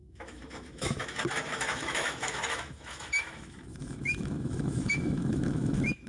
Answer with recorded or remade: remade